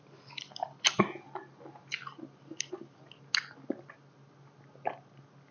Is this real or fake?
real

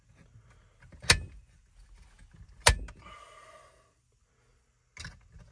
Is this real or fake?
real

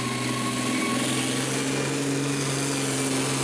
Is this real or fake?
real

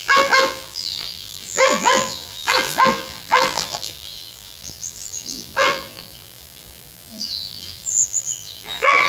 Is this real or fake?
fake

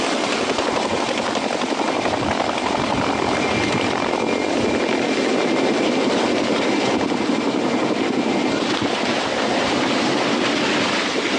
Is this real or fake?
real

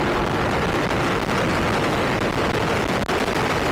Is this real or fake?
real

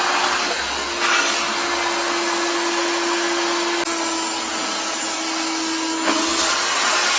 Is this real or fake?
real